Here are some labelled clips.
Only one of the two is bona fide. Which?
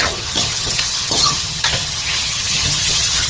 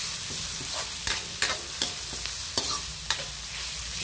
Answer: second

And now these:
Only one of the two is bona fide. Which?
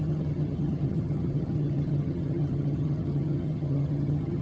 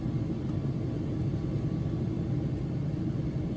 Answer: second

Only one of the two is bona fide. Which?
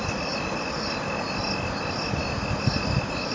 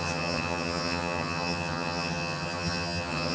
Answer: first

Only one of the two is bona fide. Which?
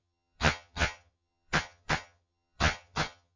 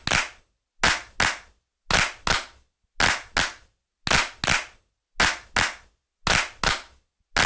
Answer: second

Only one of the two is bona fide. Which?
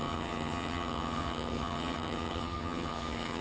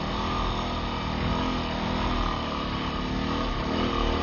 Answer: second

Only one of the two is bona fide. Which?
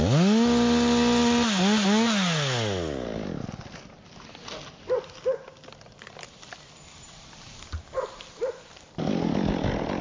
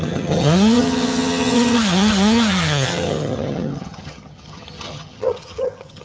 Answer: first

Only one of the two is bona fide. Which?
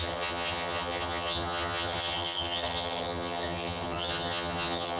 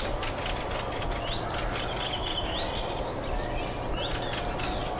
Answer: second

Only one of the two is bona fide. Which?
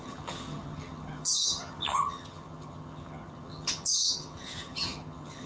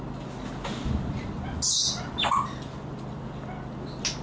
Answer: second